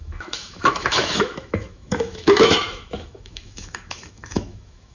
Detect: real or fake fake